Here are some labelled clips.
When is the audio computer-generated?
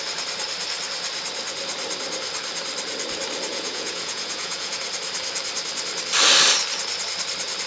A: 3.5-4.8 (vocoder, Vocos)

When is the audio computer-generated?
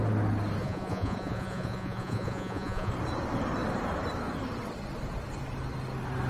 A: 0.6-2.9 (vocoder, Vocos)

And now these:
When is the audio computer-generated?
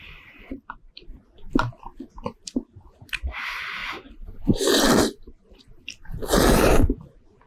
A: none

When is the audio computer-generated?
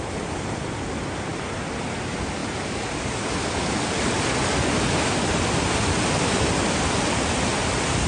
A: none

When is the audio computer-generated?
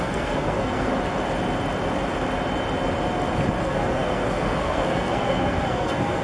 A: 0.0-0.9 (codec, SNAC); 3.6-6.2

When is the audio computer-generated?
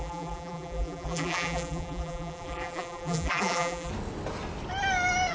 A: 0.0-3.9 (vocoder, BigVGAN v2)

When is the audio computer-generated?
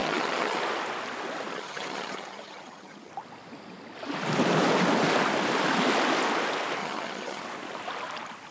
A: 0.0-0.6 (vocoder, HiFi-GAN); 1.5-3.1; 6.8-7.4